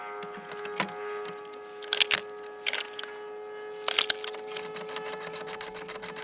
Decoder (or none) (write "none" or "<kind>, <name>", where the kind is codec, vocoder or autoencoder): none